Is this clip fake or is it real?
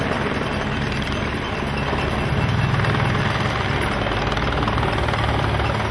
real